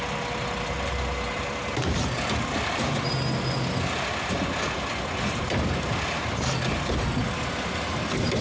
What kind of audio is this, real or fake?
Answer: real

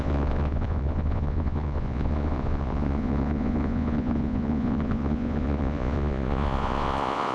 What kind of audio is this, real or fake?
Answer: fake